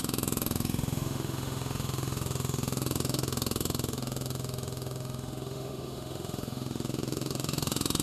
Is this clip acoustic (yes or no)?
no